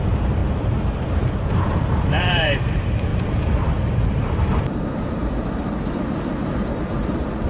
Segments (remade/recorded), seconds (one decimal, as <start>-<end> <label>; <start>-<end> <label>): 0.0-0.4 remade; 0.4-1.0 recorded; 1.0-7.5 remade